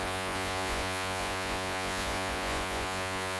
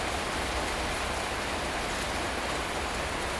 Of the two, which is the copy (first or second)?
first